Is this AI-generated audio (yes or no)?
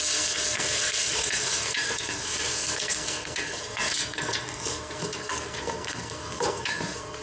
yes